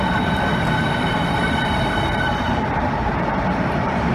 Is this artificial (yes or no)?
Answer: yes